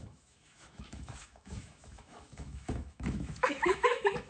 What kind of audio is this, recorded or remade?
remade